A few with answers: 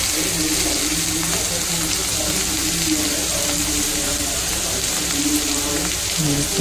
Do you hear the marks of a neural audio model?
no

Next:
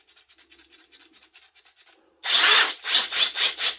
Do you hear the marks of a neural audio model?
no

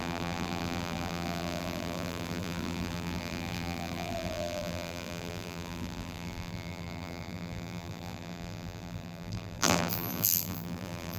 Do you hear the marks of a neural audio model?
yes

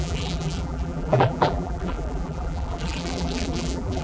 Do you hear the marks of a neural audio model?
yes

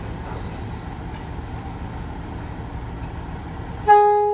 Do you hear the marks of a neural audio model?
no